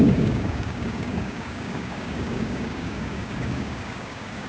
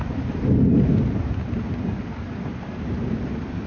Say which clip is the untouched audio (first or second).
second